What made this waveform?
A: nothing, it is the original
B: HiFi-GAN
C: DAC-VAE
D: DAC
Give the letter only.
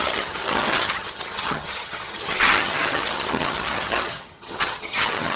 B